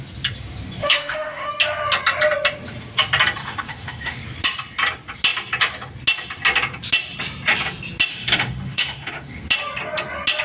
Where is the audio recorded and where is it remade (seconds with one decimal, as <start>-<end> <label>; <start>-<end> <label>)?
0.0-0.8 recorded; 0.8-1.5 remade; 1.5-3.4 recorded; 3.4-4.2 remade; 4.2-8.1 recorded; 8.1-9.4 remade; 9.4-10.4 recorded